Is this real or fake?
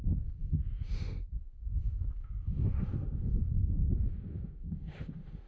fake